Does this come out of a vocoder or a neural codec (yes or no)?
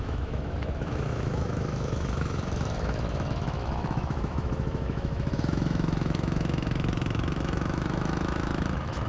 yes